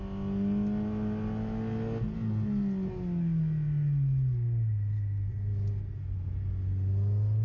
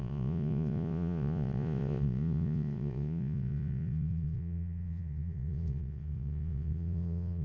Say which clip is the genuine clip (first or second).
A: first